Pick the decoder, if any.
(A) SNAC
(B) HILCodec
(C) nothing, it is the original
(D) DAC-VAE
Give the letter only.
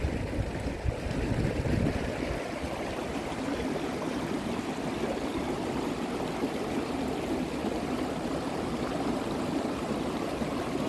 C